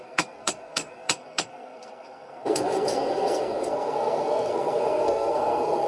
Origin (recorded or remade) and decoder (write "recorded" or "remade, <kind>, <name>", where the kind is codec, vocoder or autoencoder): remade, codec, SNAC